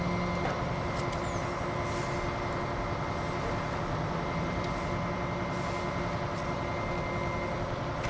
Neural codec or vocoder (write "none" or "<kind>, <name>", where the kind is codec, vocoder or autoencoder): none